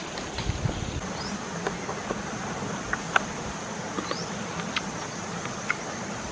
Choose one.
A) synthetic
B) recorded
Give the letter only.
B